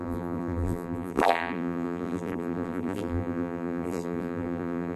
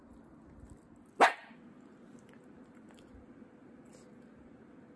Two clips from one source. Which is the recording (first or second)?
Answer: second